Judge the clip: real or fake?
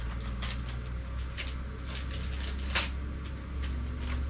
real